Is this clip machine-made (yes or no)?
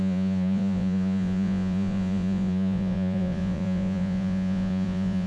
yes